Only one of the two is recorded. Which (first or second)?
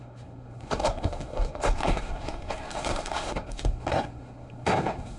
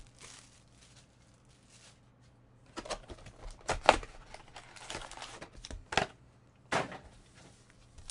second